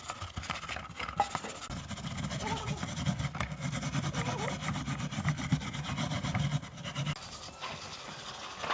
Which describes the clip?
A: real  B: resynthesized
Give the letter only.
A